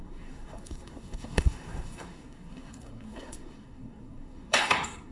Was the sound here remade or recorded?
remade